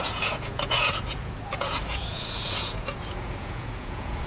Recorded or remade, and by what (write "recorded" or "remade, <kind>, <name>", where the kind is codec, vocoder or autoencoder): remade, vocoder, Vocos